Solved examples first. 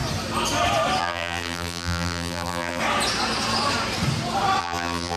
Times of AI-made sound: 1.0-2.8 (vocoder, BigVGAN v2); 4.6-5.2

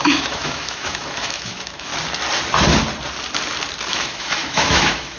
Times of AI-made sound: 0.0-1.9 (autoencoder, DAC-VAE); 3.9-5.2

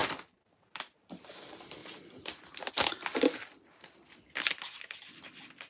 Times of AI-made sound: none

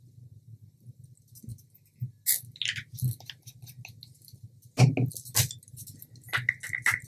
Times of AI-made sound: none

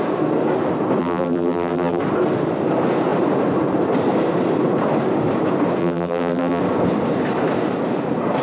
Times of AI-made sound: 1.0-2.0 (vocoder, BigVGAN v2); 5.8-6.6

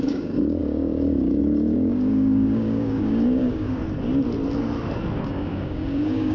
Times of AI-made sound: 0.0-3.8 (codec, DAC); 5.2-6.3

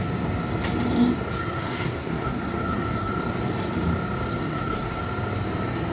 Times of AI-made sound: 1.4-3.1 (codec, SNAC); 4.3-5.0